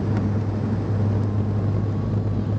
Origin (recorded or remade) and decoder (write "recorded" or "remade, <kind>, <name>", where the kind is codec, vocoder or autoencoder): recorded